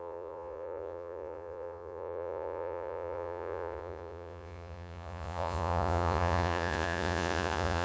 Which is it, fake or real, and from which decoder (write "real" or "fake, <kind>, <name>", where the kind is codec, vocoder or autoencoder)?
fake, vocoder, Vocos